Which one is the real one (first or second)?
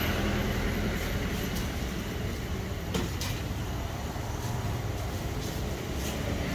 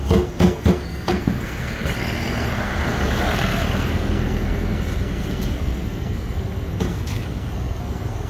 first